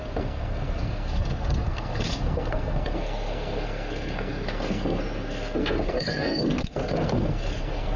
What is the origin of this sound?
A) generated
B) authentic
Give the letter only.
A